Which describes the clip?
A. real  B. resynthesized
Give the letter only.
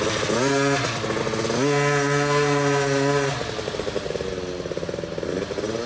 A